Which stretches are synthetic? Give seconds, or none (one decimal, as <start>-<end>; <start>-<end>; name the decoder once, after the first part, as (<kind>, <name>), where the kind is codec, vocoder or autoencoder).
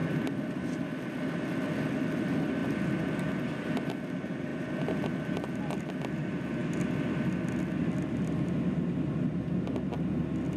none